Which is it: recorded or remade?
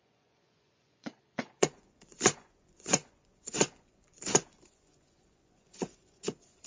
remade